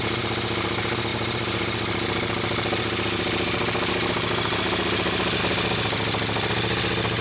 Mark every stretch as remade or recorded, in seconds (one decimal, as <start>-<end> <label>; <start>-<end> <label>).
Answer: 0.0-7.2 recorded